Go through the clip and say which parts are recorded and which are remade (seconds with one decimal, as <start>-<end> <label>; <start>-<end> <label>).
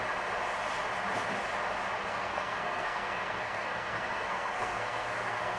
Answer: 0.0-2.1 recorded; 2.1-5.6 remade